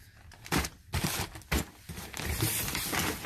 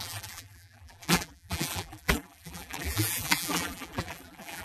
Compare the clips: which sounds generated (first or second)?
second